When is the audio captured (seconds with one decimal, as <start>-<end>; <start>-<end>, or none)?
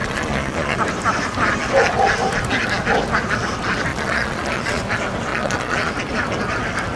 0.8-3.9; 4.8-5.3; 5.9-7.0